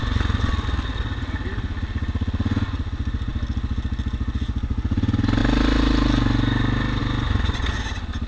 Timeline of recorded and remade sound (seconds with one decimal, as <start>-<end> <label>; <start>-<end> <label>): 0.0-8.3 recorded